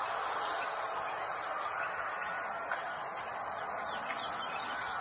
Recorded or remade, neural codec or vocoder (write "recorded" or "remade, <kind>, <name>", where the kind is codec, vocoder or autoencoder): recorded